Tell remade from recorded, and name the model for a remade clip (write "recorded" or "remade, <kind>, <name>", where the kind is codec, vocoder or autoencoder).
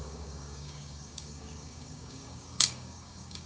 remade, codec, DAC